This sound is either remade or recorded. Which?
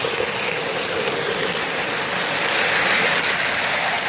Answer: recorded